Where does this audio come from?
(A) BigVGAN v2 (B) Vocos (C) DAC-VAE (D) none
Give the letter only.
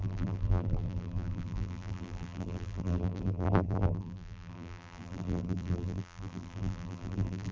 A